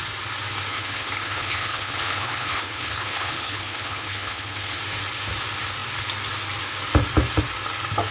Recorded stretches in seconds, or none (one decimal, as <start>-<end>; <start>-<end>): 0.0-0.7; 4.8-8.1